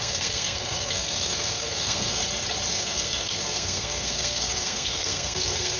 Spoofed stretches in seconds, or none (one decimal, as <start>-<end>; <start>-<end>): 0.0-2.2; 2.7-5.8